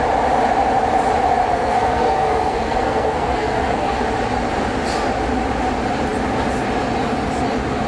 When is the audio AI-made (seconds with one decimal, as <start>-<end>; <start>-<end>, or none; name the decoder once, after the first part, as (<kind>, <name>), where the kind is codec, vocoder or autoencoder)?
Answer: 1.5-4.0 (codec, SNAC)